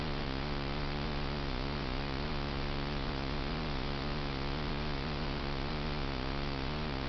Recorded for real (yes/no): no